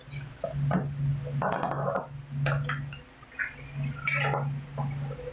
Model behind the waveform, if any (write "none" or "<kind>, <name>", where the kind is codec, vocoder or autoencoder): none